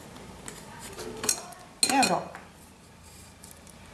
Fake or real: real